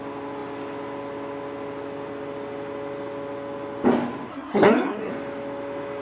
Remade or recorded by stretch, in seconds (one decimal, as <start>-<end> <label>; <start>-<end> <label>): 0.0-4.3 recorded; 4.3-5.1 remade; 5.1-6.0 recorded